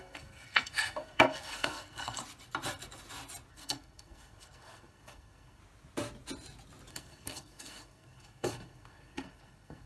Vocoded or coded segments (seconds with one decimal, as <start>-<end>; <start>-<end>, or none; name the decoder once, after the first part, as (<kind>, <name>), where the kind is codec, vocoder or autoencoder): 0.0-2.2 (codec, SNAC); 3.5-5.6; 6.9-9.9